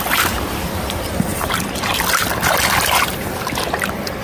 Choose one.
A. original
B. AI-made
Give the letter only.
A